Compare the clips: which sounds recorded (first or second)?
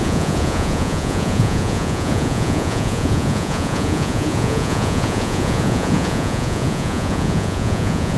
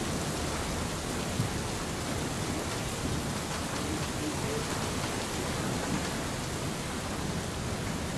second